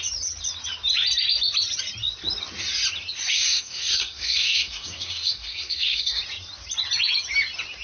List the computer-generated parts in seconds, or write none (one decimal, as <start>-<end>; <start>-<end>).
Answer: 3.3-6.2